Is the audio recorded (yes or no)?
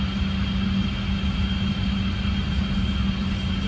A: yes